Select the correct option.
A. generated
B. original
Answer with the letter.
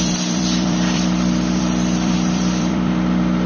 A